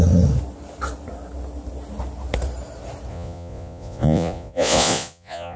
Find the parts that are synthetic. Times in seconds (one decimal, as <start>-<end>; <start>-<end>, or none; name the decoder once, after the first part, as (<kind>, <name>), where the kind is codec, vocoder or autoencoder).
3.1-5.6 (vocoder, Vocos)